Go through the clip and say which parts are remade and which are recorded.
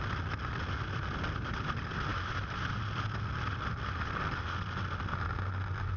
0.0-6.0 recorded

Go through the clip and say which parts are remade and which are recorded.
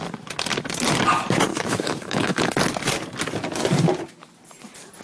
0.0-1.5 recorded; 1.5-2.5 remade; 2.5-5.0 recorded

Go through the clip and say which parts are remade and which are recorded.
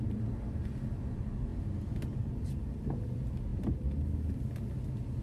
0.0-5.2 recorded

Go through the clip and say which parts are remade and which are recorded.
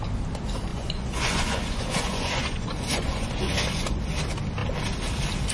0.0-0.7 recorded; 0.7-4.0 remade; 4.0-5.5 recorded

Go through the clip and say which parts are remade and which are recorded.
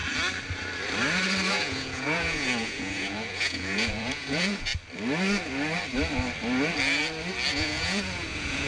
0.0-1.5 recorded; 1.5-4.7 remade; 4.7-7.5 recorded; 7.5-8.7 remade